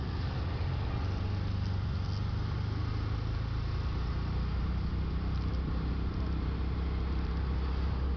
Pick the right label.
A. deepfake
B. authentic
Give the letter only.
B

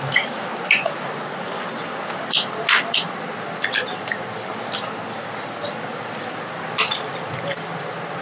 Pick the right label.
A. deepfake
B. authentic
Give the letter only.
B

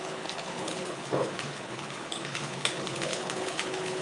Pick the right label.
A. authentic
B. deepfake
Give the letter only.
B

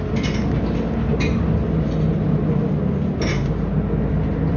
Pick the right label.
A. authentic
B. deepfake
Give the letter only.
A